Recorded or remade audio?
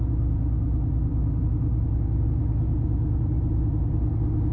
recorded